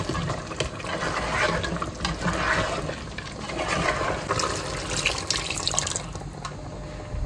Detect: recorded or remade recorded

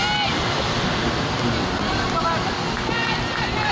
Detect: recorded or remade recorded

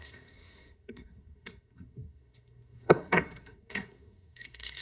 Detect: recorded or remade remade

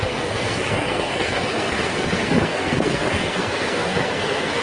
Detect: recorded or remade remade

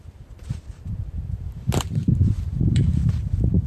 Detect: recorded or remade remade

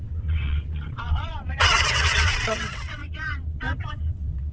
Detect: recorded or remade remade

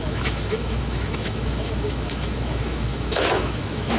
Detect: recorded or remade remade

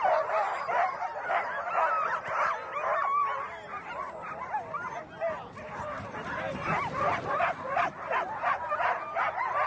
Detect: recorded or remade recorded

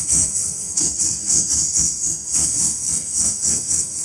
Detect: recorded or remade remade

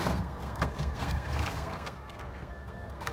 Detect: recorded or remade remade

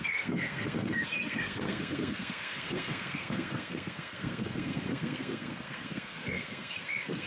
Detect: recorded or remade remade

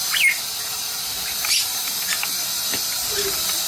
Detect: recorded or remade recorded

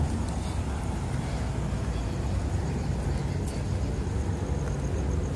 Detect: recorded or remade recorded